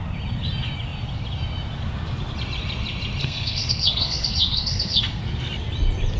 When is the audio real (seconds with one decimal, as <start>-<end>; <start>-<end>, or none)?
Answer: 0.0-3.2; 5.2-6.2